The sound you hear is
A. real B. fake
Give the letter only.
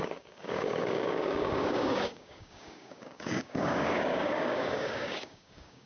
B